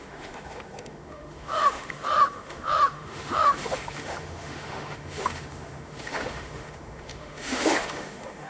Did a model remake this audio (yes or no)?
yes